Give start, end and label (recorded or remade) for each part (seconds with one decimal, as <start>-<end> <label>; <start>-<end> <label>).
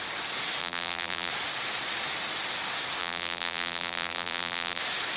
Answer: 0.0-0.6 recorded; 0.6-1.3 remade; 1.3-3.0 recorded; 3.0-4.8 remade; 4.8-5.2 recorded